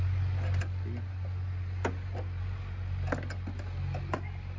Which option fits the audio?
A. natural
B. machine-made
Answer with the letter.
A